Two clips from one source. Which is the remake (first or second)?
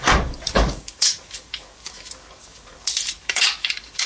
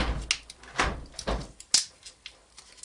first